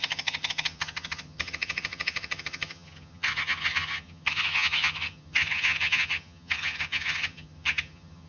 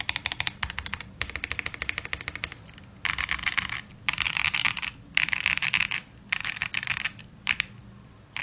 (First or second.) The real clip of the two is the second